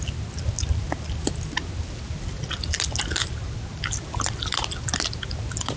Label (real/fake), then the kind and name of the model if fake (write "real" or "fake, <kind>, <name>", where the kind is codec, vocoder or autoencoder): real